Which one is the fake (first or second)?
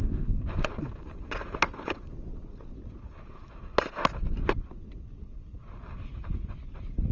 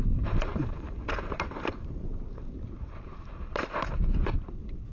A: second